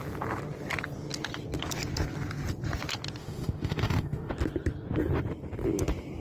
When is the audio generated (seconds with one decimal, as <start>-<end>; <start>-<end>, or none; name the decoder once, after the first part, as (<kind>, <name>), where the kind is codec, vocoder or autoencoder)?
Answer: 3.2-4.3 (autoencoder, DAC-VAE)